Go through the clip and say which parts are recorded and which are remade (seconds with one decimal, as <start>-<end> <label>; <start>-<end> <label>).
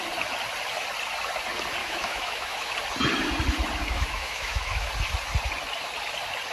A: 0.0-1.8 recorded; 1.8-2.7 remade; 2.7-3.8 recorded; 3.8-4.9 remade; 4.9-6.5 recorded